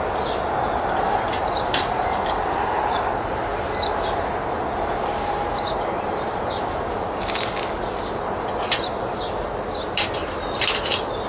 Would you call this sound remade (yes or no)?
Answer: no